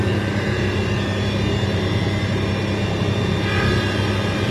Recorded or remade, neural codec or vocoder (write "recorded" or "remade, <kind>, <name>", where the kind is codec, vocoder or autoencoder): recorded